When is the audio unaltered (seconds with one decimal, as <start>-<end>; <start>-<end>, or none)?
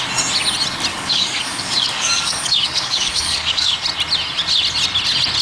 0.0-0.9; 3.7-5.4